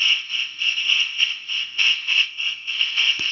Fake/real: fake